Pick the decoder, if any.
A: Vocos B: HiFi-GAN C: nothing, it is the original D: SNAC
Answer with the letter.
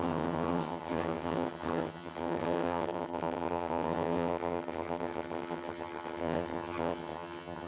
B